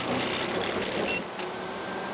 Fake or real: real